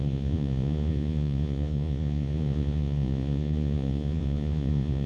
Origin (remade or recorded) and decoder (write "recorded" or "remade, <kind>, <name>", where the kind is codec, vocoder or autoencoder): remade, vocoder, Vocos